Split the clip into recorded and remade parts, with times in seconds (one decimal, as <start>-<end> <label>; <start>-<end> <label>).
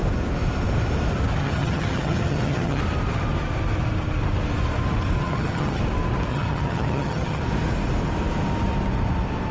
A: 0.0-1.4 recorded; 1.4-2.8 remade; 2.8-5.2 recorded; 5.2-5.8 remade; 5.8-6.3 recorded; 6.3-7.4 remade; 7.4-9.5 recorded